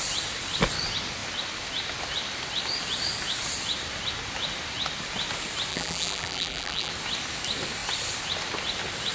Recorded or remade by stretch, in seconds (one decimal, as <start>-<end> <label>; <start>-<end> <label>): 0.0-5.7 recorded; 5.7-6.9 remade; 6.9-9.1 recorded